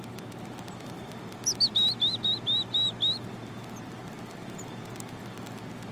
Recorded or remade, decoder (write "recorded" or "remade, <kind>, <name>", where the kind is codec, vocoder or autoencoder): recorded